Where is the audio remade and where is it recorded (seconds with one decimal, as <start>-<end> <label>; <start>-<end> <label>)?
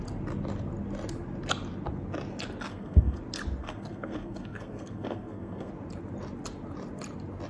0.0-2.7 recorded; 2.7-3.2 remade; 3.2-3.6 recorded; 3.6-5.7 remade; 5.7-7.5 recorded